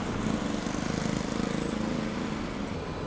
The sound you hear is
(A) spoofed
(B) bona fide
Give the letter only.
B